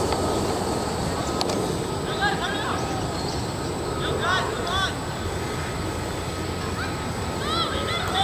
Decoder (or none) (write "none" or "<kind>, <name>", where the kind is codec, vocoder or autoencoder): none